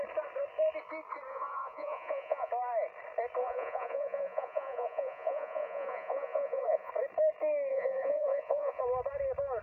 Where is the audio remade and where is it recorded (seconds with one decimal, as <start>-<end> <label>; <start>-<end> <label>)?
0.0-1.3 recorded; 1.3-2.5 remade; 2.5-3.4 recorded; 3.4-6.9 remade; 6.9-7.7 recorded; 7.7-8.8 remade; 8.8-9.6 recorded